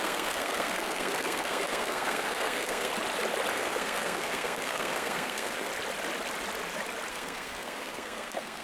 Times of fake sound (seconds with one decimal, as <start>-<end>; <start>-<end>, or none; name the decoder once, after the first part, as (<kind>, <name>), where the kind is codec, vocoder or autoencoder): 0.0-2.9 (codec, SNAC); 3.5-5.7; 7.1-8.6